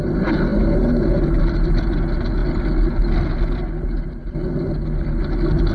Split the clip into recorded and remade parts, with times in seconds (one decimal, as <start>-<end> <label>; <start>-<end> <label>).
0.0-5.7 recorded